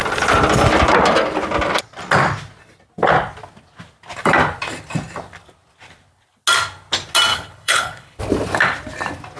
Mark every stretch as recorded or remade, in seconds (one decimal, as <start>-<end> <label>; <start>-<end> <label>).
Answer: 0.0-7.3 recorded; 7.3-8.2 remade; 8.2-9.4 recorded